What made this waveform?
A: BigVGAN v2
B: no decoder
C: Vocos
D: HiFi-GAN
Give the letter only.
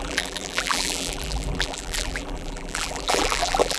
A